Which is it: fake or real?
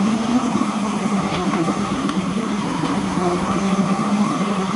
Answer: fake